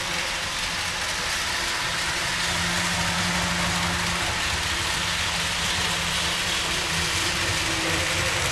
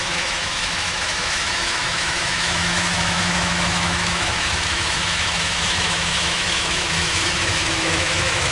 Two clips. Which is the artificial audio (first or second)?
second